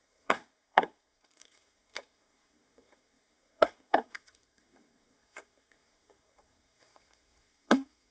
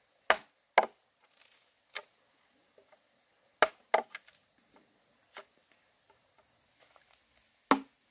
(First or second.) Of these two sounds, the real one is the second